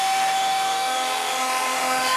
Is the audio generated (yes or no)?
yes